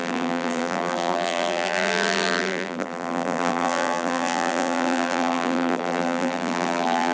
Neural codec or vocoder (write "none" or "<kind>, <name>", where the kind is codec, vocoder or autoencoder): vocoder, BigVGAN v2